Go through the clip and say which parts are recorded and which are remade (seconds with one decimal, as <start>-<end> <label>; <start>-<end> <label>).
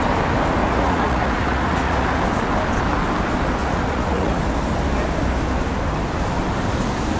0.0-0.6 recorded; 0.6-2.2 remade; 2.2-3.6 recorded; 3.6-4.4 remade; 4.4-7.2 recorded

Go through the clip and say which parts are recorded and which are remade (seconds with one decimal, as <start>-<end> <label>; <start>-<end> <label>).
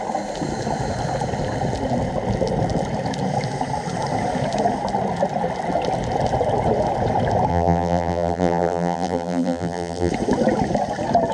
0.0-7.5 recorded; 7.5-10.1 remade; 10.1-11.3 recorded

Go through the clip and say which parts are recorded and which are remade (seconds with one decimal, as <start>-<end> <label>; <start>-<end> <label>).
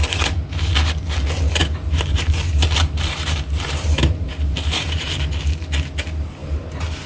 0.0-1.6 recorded; 1.6-5.2 remade; 5.2-7.1 recorded